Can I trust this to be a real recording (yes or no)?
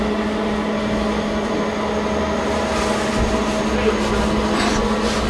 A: yes